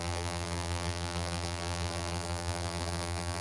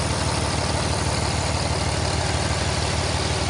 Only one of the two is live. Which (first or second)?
second